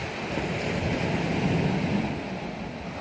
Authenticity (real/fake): real